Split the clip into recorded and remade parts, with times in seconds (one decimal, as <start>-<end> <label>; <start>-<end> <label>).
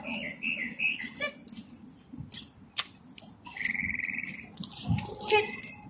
0.0-5.9 recorded